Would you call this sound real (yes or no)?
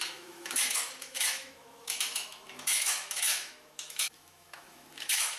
no